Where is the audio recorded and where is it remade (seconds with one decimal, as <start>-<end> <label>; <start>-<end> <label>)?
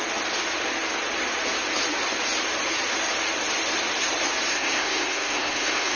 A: 0.0-4.5 recorded; 4.5-6.0 remade